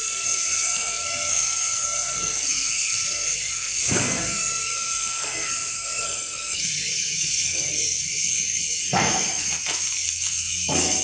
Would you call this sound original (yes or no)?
no